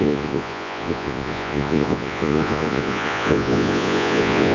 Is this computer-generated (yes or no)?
yes